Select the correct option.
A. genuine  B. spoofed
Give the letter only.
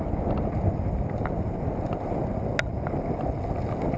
A